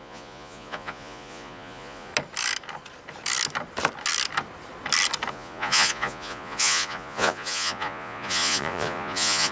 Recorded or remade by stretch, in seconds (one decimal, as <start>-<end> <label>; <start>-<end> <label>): 0.0-2.1 remade; 2.1-5.3 recorded; 5.3-9.5 remade